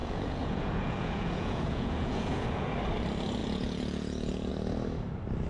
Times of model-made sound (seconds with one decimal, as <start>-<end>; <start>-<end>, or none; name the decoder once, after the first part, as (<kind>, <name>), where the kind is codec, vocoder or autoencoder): 0.0-2.7 (vocoder, Vocos); 3.4-4.5